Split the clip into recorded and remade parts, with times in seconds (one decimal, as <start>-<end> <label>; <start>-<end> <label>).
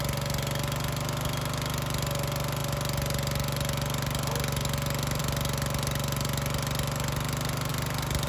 0.0-7.7 recorded; 7.7-8.3 remade